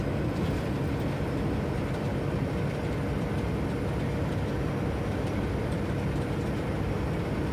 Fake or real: real